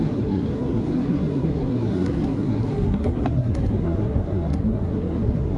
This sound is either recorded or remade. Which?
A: remade